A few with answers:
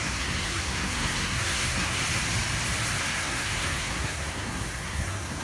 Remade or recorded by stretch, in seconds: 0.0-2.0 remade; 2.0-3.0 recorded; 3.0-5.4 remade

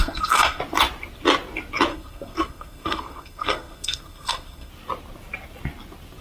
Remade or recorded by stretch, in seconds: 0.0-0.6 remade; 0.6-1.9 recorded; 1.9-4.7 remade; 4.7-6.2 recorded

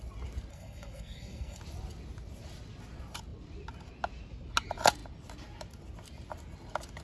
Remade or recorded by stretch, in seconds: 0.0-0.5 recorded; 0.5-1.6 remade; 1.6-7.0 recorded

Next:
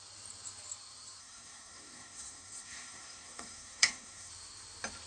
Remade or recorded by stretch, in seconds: 0.0-1.2 recorded; 1.2-4.3 remade; 4.3-5.1 recorded